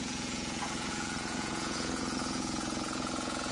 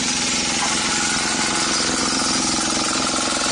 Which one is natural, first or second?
second